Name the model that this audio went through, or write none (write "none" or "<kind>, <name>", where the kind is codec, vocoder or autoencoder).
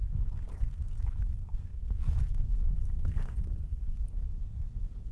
codec, SNAC